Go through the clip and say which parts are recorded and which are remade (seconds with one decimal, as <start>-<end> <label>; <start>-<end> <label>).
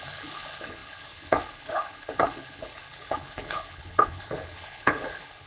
0.0-5.5 remade